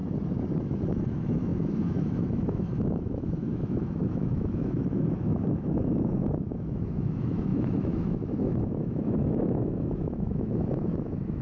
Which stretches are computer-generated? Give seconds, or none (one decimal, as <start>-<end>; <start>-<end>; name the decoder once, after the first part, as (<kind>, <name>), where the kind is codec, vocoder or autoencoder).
0.6-11.4 (autoencoder, DAC-VAE)